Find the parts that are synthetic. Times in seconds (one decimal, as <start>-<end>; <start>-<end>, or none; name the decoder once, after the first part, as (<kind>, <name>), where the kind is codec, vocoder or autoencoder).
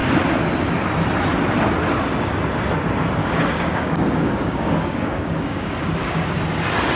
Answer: 3.2-6.2 (codec, DAC)